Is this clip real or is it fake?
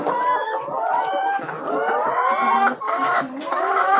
real